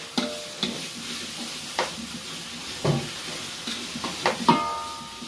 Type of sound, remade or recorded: recorded